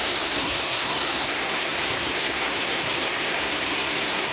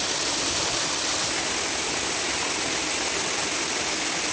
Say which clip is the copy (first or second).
first